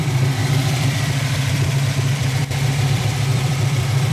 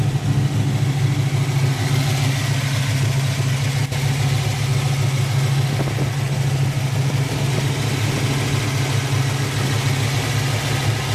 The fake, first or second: first